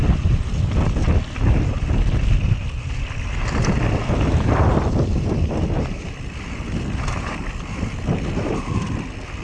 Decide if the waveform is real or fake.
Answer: real